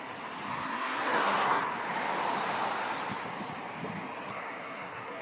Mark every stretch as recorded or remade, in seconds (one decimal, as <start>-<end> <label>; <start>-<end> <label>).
0.0-0.5 recorded; 0.5-1.6 remade; 1.6-4.3 recorded; 4.3-5.2 remade